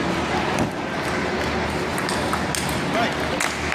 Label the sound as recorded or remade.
recorded